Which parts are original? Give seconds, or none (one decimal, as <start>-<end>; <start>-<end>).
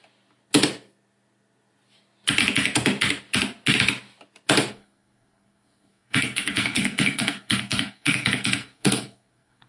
0.0-4.7